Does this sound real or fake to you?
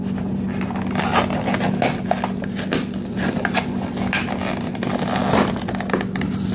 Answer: real